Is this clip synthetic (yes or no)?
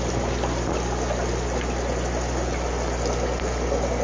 no